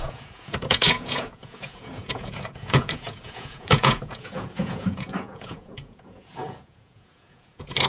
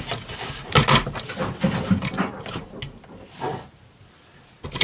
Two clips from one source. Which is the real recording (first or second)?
second